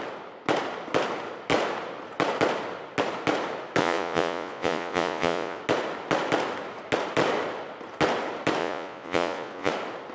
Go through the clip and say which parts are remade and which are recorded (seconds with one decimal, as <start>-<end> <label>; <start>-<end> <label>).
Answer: 0.0-3.8 recorded; 3.8-5.6 remade; 5.6-8.6 recorded; 8.6-9.7 remade; 9.7-10.1 recorded